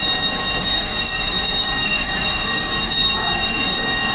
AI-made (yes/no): yes